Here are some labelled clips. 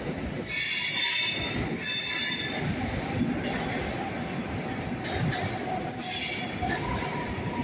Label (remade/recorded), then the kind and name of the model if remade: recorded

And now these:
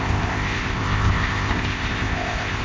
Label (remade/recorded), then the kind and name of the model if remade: remade, codec, ZipCodec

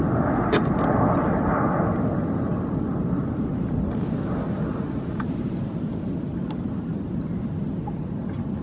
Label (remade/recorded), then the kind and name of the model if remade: recorded